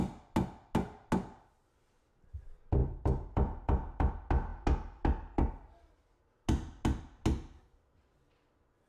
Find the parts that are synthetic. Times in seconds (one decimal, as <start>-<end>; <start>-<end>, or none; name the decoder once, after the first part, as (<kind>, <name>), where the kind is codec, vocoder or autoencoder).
2.8-4.1 (vocoder, BigVGAN v2)